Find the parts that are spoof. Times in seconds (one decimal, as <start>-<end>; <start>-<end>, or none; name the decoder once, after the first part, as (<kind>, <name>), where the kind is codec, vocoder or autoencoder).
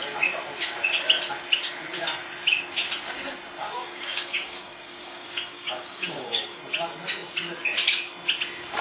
3.6-6.6 (codec, DAC)